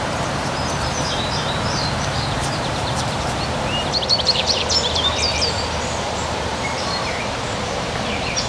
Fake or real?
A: fake